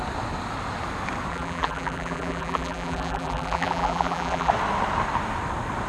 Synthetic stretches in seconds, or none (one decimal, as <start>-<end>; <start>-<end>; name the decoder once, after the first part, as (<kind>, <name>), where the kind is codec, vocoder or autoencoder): 1.3-4.5 (vocoder, BigVGAN v2)